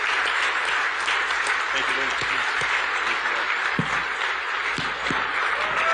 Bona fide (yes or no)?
yes